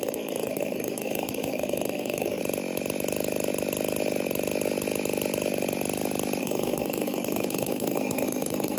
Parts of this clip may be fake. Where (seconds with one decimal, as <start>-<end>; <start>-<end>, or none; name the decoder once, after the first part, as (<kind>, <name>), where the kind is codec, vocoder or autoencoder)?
0.0-2.4 (codec, SNAC); 6.4-8.8